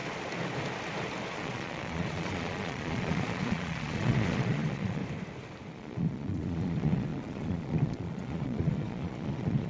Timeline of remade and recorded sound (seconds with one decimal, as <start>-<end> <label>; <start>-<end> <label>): 0.0-1.3 recorded; 1.3-5.0 remade; 5.0-5.7 recorded; 5.7-9.7 remade